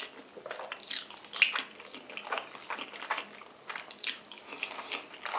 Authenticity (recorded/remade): recorded